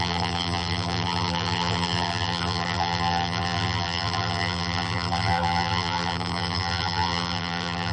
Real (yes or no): no